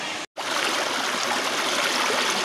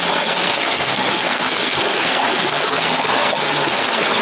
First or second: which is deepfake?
second